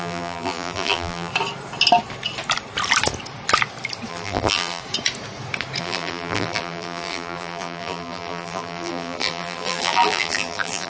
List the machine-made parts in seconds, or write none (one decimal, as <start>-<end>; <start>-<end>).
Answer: 0.0-1.3; 4.1-4.8; 5.8-10.9